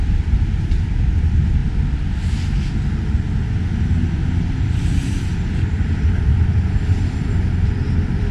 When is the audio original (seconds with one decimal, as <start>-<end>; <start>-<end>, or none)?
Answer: 1.6-4.4